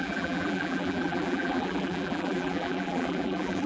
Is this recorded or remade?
remade